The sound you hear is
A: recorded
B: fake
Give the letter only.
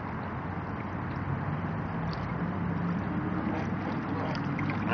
A